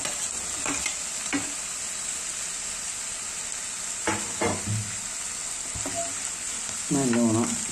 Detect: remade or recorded recorded